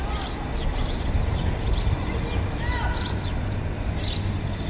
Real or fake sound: real